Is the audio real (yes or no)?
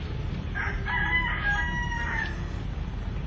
yes